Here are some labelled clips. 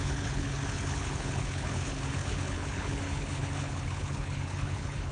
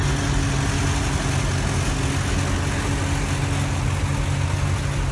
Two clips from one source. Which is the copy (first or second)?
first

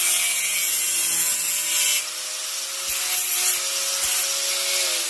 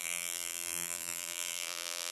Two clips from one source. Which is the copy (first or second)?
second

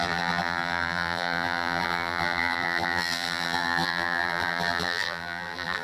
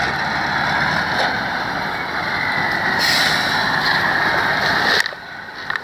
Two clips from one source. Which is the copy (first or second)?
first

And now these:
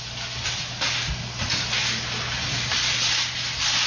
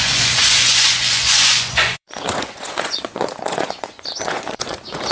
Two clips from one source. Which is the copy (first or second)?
second